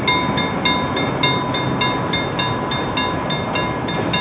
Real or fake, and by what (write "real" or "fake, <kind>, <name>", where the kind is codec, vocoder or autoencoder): real